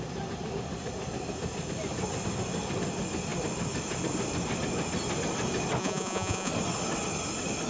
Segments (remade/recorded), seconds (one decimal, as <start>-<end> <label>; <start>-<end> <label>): 0.0-5.8 recorded; 5.8-6.5 remade; 6.5-7.7 recorded